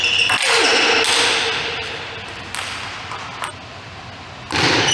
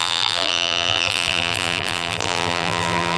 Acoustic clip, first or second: first